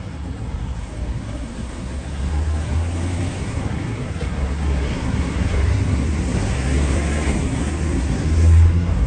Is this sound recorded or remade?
remade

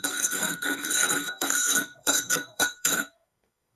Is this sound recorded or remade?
remade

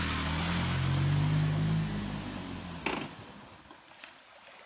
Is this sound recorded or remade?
recorded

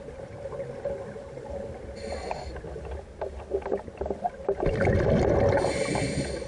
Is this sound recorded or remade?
recorded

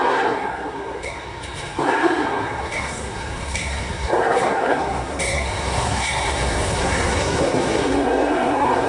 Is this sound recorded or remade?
remade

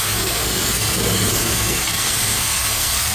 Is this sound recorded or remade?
remade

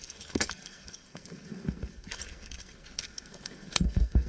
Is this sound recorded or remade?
remade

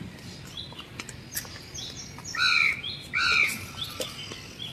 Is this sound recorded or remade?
recorded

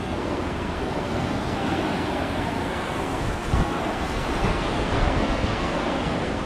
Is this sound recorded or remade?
remade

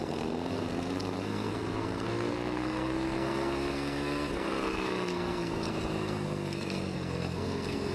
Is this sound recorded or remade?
remade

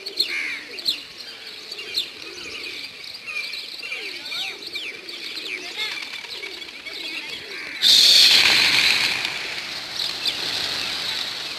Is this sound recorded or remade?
recorded